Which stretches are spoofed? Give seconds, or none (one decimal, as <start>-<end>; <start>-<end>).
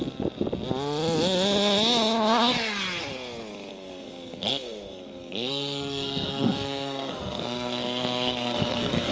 3.7-9.1